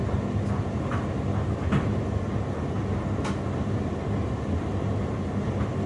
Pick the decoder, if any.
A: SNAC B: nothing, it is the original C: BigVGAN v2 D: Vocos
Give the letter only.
B